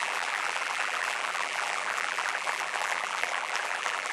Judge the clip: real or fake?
fake